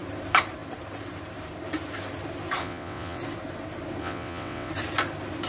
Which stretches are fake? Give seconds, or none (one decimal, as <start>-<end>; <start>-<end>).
2.6-3.2; 4.0-4.7